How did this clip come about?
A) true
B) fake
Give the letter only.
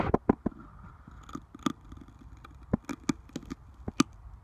A